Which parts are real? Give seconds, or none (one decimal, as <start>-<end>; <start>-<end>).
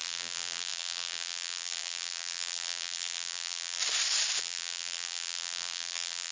3.8-4.4